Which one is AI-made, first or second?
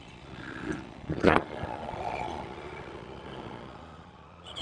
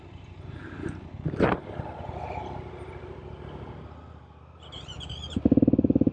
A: first